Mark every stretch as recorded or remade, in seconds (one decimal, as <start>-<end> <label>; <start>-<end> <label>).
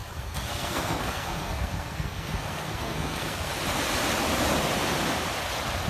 0.0-3.5 remade; 3.5-5.9 recorded